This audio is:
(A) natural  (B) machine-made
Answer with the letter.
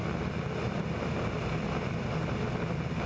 A